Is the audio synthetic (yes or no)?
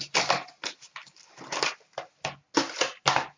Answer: no